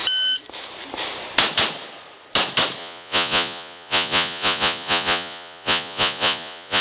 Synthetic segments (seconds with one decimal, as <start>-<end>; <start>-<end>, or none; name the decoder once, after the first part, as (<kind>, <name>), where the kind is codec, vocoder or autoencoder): 2.8-6.8 (vocoder, Vocos)